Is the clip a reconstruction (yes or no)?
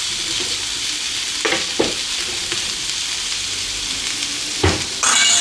no